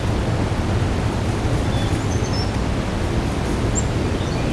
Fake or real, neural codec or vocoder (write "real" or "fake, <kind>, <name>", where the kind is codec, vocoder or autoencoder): real